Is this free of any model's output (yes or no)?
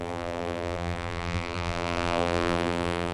no